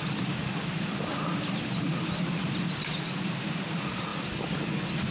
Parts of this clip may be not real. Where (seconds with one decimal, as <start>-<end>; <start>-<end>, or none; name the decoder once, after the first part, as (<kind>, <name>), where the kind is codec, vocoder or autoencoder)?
none